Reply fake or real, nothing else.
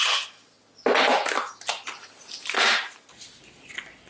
real